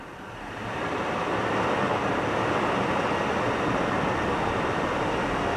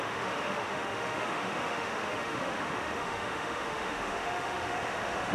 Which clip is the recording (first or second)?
first